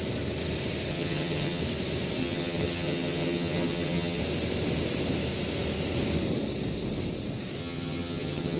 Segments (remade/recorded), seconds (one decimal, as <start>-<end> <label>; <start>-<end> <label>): 0.0-0.9 recorded; 0.9-1.6 remade; 1.6-2.2 recorded; 2.2-4.2 remade; 4.2-7.6 recorded; 7.6-8.6 remade